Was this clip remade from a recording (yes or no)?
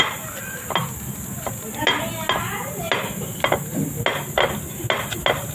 no